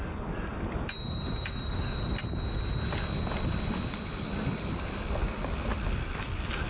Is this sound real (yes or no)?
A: yes